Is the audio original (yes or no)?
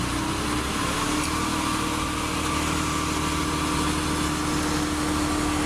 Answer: yes